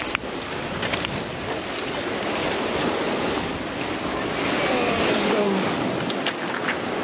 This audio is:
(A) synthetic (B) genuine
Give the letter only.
B